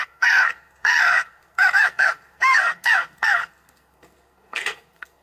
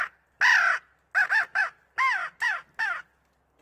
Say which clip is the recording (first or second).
second